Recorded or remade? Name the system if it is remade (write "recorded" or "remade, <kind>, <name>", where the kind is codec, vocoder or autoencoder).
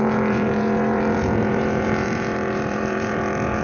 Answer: remade, vocoder, BigVGAN v2